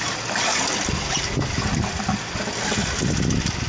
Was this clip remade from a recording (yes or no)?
no